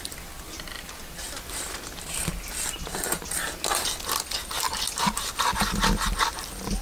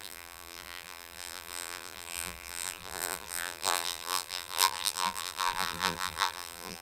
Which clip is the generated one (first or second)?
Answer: second